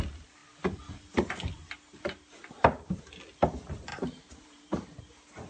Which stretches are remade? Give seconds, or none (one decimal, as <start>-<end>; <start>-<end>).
3.9-5.0